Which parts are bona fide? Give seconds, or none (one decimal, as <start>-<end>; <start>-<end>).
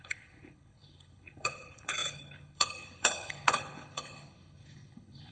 none